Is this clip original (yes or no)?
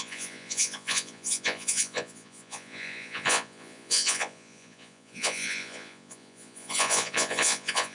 no